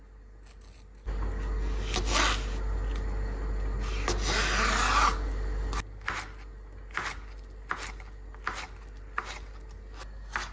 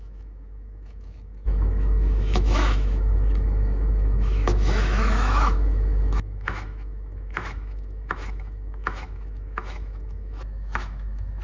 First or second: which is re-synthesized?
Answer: second